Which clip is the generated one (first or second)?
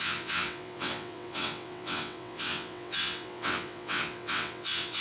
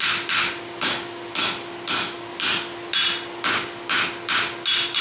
first